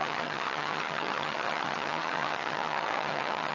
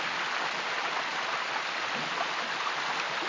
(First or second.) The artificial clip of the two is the first